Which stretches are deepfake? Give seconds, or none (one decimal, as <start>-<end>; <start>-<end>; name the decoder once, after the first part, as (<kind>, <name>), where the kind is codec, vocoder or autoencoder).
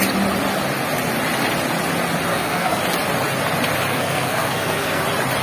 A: 2.3-2.8 (codec, SNAC); 3.9-5.0